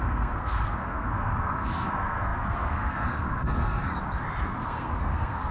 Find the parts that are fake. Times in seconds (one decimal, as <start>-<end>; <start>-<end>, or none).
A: 0.0-3.9; 4.4-5.5